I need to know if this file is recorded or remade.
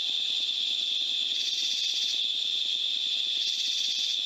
recorded